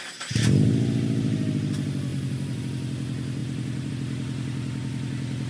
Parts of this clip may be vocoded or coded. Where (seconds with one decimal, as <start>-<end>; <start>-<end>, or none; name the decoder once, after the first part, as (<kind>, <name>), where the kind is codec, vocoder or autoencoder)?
2.1-2.6 (vocoder, BigVGAN v2); 3.4-3.9